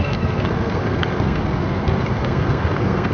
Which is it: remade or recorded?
remade